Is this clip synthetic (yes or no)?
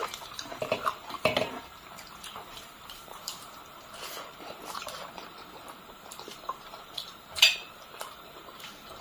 yes